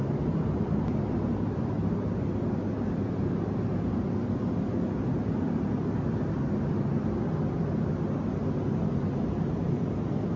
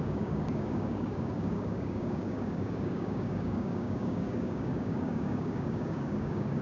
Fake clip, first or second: second